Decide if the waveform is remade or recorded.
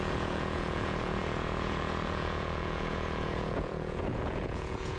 remade